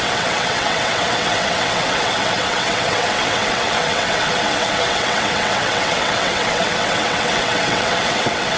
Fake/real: fake